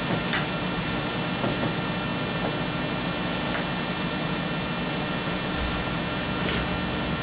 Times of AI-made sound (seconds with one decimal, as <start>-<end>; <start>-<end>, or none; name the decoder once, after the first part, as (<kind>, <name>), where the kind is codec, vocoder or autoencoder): none